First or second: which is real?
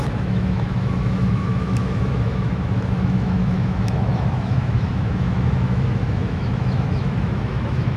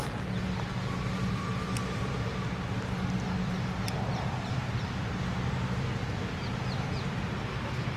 second